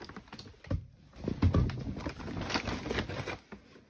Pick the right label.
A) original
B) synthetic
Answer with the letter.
A